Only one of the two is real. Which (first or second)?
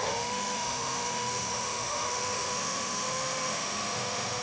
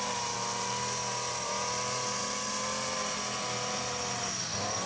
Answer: second